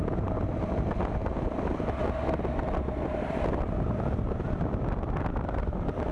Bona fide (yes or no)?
yes